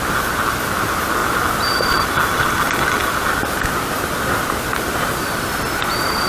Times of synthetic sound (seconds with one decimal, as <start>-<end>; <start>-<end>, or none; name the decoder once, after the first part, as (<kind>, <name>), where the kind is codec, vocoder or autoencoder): 3.0-5.7 (vocoder, BigVGAN v2)